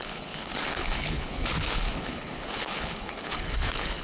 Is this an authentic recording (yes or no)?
no